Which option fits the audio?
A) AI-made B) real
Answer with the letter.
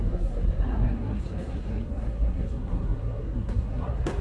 A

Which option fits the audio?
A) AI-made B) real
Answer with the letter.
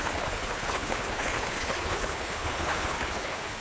A